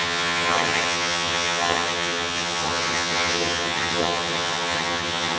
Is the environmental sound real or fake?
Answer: fake